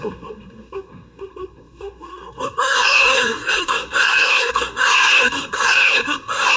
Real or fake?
fake